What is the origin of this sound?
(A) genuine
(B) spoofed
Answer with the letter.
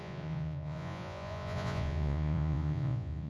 B